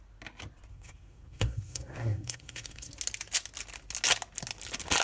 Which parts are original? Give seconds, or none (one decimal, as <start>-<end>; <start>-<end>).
0.0-0.7; 2.9-5.0